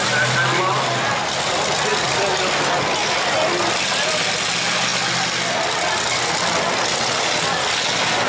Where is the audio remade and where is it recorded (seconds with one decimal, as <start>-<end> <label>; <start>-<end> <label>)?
0.0-1.9 recorded; 1.9-2.5 remade; 2.5-4.9 recorded; 4.9-5.7 remade; 5.7-8.3 recorded